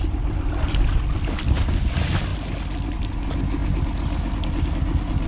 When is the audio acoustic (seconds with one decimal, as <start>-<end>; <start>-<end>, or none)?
0.0-5.3